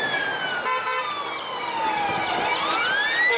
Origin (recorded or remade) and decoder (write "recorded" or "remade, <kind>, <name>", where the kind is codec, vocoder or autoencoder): recorded